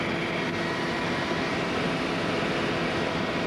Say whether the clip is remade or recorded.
recorded